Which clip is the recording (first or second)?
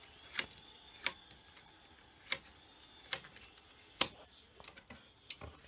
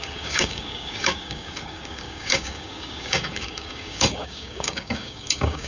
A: first